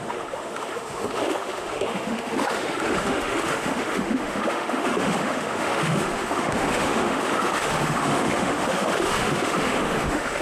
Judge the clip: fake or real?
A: fake